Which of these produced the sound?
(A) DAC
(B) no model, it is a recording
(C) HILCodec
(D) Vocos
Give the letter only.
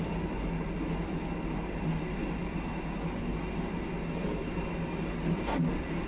B